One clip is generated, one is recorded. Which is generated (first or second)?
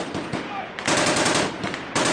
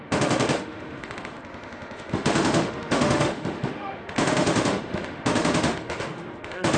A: second